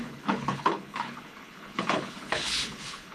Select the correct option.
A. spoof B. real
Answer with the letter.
A